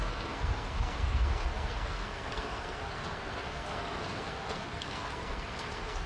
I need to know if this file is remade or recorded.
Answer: remade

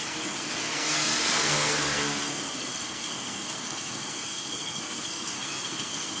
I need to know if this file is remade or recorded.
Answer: remade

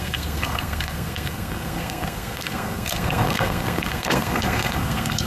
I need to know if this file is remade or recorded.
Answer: remade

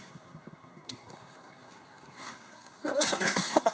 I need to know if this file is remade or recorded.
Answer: remade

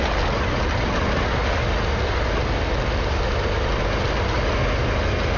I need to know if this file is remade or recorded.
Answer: recorded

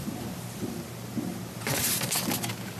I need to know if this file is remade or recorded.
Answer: recorded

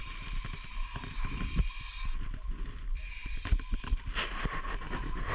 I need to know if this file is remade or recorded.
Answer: recorded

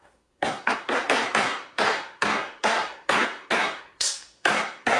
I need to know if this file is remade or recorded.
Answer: remade